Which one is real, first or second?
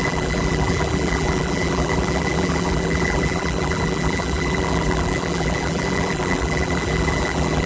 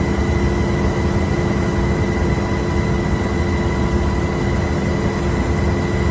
second